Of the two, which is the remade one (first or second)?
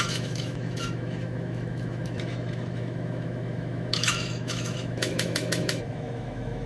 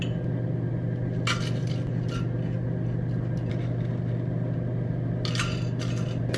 first